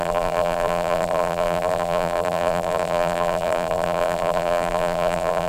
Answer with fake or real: fake